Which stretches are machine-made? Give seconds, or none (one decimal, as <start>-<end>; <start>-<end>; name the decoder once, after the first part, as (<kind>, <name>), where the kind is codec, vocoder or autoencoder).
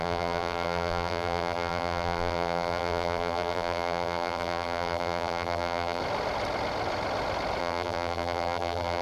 0.0-6.0 (vocoder, BigVGAN v2); 7.6-9.0